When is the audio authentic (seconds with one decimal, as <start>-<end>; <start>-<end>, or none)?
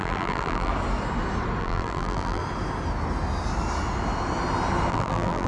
0.7-1.6; 2.4-4.9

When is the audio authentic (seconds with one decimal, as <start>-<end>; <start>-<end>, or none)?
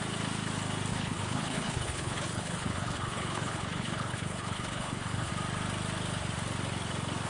0.0-0.9; 5.3-7.3